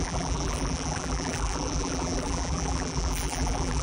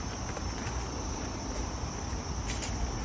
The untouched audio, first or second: second